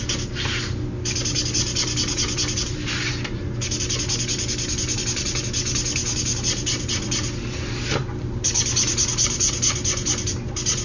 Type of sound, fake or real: real